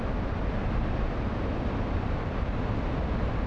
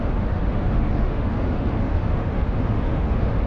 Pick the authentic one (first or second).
first